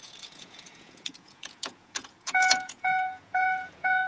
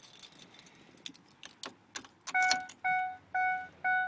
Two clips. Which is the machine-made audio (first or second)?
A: first